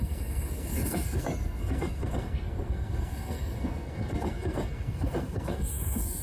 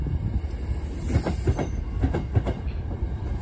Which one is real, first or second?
second